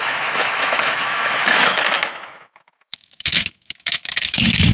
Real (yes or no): no